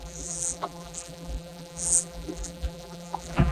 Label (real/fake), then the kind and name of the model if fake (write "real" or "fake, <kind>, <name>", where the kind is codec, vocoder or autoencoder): fake, vocoder, BigVGAN v2